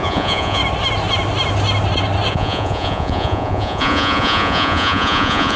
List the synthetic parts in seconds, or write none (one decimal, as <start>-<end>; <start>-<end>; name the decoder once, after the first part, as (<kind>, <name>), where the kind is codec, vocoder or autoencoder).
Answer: 0.0-0.6 (vocoder, Vocos); 2.3-5.6